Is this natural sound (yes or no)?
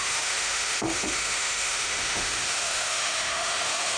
no